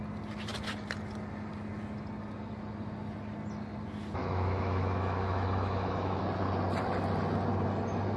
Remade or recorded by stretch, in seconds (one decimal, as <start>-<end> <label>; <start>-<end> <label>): 0.0-4.2 recorded; 4.2-6.2 remade; 6.2-8.2 recorded